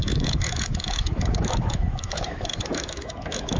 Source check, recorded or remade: remade